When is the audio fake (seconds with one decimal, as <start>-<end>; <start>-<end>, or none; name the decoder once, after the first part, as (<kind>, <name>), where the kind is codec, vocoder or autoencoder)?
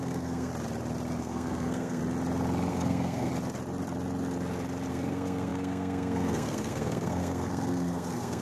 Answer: 0.0-0.5 (codec, SNAC); 1.2-2.0; 2.7-3.3; 4.9-8.4